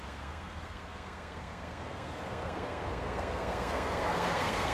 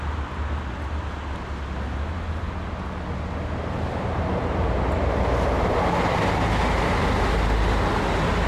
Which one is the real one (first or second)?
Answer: second